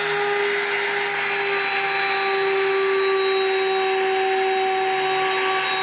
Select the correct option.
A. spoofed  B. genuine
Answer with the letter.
B